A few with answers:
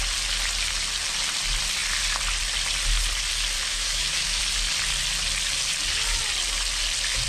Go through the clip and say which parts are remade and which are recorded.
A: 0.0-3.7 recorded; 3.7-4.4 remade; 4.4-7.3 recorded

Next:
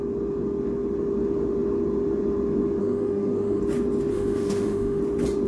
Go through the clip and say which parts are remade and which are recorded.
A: 0.0-2.8 recorded; 2.8-3.6 remade; 3.6-4.1 recorded; 4.1-5.0 remade; 5.0-5.5 recorded

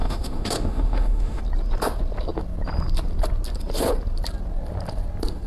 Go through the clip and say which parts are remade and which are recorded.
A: 0.0-1.4 remade; 1.4-5.5 recorded